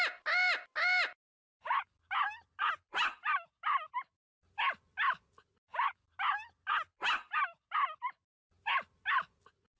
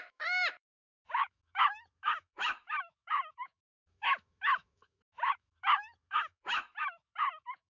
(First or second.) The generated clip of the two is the second